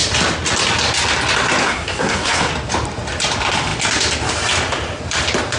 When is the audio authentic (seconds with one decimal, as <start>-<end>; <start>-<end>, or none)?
0.0-1.6; 2.5-5.6